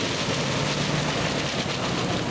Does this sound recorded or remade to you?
recorded